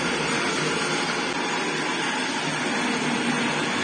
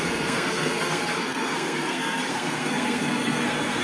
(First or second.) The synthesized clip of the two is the second